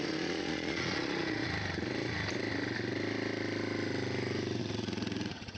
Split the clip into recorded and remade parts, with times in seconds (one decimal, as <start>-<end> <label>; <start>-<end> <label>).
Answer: 0.0-1.4 remade; 1.4-4.6 recorded; 4.6-5.6 remade